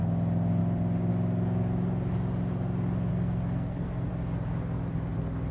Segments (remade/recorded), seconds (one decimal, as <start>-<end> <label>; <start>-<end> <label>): 0.0-3.1 recorded; 3.1-4.1 remade; 4.1-5.5 recorded